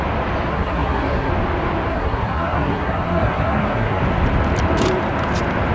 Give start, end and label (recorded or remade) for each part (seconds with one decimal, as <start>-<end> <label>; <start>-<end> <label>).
0.0-0.5 recorded; 0.5-1.3 remade; 1.3-1.9 recorded; 1.9-4.0 remade; 4.0-5.7 recorded